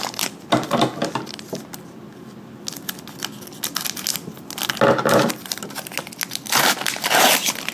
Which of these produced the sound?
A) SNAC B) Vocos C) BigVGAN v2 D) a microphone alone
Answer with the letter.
D